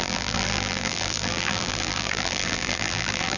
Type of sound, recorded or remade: remade